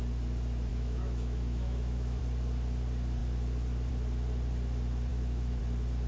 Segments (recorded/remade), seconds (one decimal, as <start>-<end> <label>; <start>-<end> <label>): 0.0-0.7 recorded; 0.7-2.2 remade; 2.2-5.1 recorded; 5.1-5.6 remade; 5.6-6.1 recorded

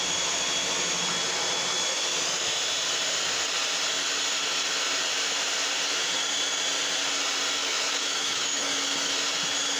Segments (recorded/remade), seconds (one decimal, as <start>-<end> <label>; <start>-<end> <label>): 0.0-7.6 recorded; 7.6-8.7 remade; 8.7-9.8 recorded

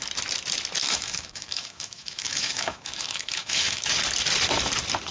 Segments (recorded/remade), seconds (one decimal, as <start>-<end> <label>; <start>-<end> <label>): 0.0-0.8 recorded; 0.8-3.9 remade; 3.9-5.1 recorded

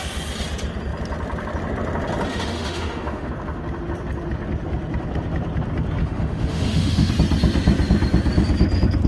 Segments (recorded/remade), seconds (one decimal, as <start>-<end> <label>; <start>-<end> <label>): 0.0-2.3 recorded; 2.3-3.3 remade; 3.3-6.0 recorded; 6.0-7.1 remade; 7.1-9.1 recorded

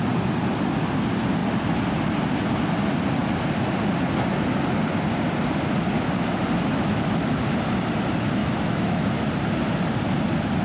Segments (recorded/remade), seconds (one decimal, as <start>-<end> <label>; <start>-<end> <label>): 0.0-8.4 recorded; 8.4-9.1 remade; 9.1-10.6 recorded